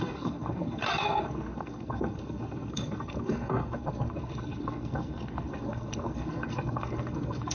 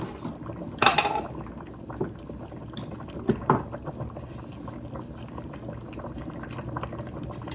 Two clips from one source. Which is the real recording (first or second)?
second